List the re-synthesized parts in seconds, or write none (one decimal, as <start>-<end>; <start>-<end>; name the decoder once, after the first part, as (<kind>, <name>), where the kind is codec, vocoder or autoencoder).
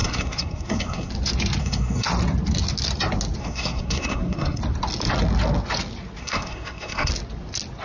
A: 0.0-1.1 (codec, SNAC); 1.6-2.1; 3.4-4.6; 6.2-7.1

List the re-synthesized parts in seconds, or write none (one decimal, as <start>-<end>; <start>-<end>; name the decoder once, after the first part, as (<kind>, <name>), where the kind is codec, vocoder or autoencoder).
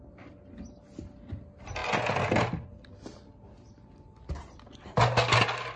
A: none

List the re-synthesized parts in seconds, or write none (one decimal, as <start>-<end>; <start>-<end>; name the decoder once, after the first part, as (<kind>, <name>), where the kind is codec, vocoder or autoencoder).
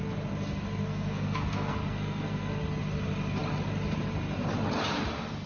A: 0.8-2.5 (codec, SNAC)